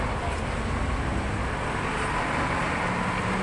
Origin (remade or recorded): recorded